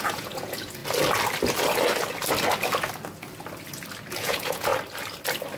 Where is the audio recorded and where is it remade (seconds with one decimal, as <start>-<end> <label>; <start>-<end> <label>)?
0.0-0.8 remade; 0.8-4.2 recorded; 4.2-4.7 remade; 4.7-5.6 recorded